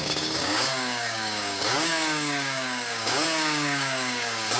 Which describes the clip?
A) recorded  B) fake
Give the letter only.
B